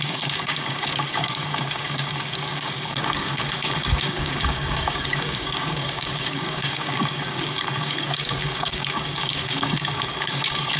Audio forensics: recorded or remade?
remade